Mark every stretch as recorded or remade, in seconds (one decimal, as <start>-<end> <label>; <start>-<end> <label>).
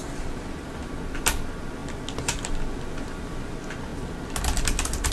0.0-5.1 recorded